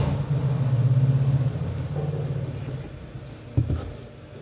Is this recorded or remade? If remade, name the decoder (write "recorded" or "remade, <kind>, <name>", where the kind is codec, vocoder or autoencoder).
recorded